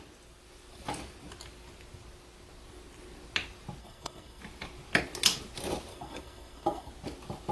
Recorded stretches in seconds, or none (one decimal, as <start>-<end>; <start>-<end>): 0.0-3.8; 4.4-5.9; 6.9-7.5